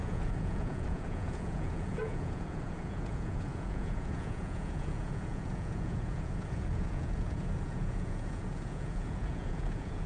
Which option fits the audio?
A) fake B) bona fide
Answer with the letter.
A